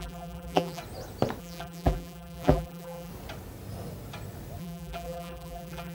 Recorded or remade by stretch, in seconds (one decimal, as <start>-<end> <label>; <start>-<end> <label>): 0.0-0.8 remade; 0.8-1.4 recorded; 1.4-3.1 remade; 3.1-4.6 recorded; 4.6-5.9 remade